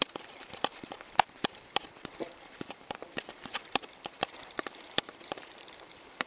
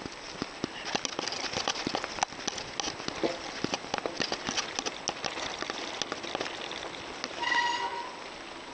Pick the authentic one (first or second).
second